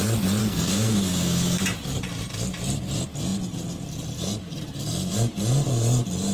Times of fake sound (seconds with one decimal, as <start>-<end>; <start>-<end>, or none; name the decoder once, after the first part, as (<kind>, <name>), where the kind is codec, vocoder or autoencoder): 0.4-1.6 (codec, SNAC)